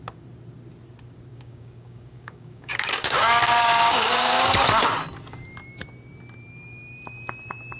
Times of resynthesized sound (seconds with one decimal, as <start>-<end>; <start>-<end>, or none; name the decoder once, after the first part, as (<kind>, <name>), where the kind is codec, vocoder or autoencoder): 1.3-4.4 (codec, DAC)